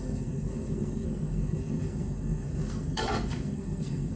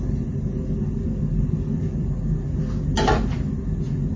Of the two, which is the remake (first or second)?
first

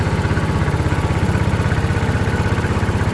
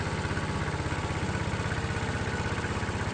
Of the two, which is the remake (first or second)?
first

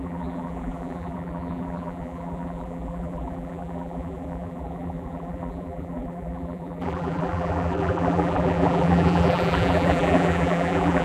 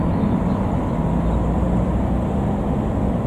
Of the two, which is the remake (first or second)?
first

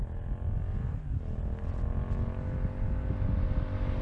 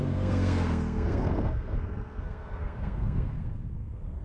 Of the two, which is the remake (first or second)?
second